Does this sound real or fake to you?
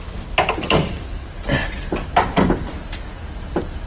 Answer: real